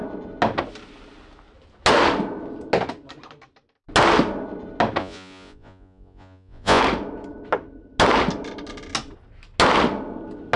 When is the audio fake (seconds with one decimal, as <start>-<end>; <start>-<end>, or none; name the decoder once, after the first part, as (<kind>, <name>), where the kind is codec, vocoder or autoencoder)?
5.0-6.8 (vocoder, Vocos)